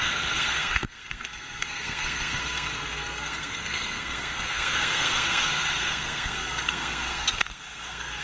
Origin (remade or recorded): remade